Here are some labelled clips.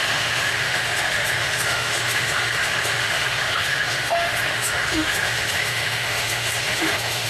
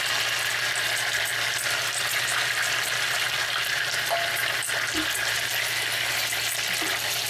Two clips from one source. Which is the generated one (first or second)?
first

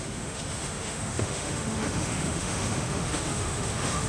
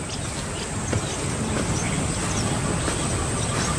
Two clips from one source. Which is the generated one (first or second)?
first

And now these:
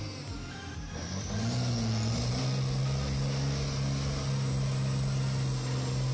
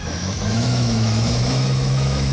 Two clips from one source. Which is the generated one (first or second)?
second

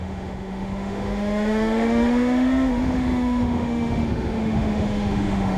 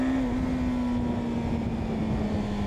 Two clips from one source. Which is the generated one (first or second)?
first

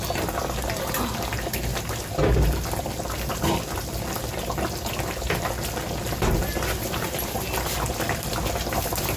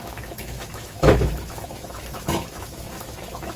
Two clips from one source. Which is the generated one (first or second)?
second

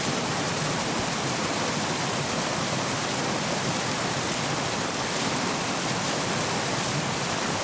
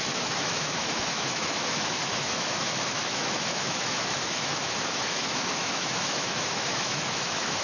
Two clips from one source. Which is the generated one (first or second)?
second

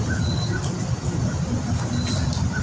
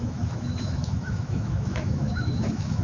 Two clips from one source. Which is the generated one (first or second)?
second